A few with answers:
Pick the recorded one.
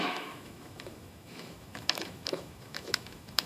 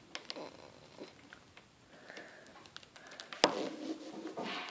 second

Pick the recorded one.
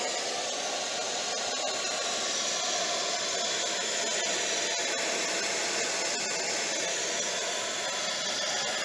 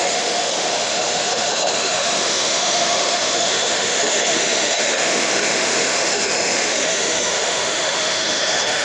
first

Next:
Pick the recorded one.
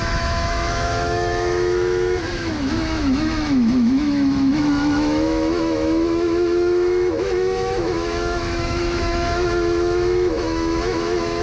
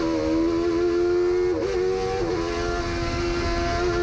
second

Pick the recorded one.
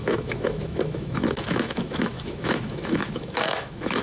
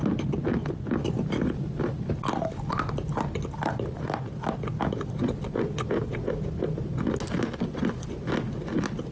second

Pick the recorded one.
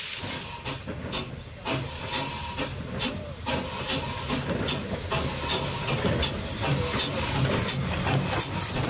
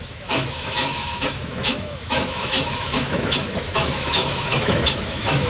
first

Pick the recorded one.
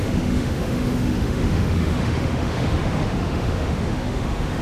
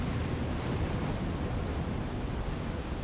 second